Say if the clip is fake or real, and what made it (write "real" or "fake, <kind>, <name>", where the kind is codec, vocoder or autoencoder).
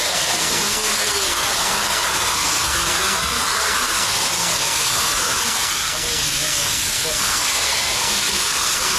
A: fake, codec, SNAC